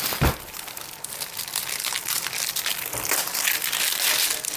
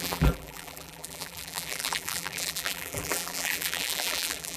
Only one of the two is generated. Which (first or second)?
second